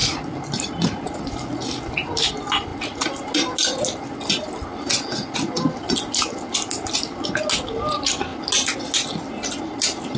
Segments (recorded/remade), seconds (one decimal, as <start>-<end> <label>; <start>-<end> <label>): 0.0-10.2 recorded